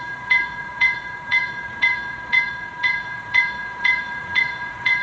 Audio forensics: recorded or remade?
remade